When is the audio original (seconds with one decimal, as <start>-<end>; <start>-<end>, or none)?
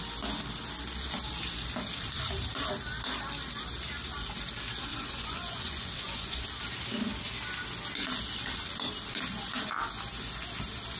0.0-4.9; 6.4-11.0